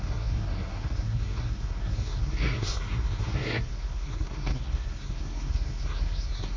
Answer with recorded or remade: remade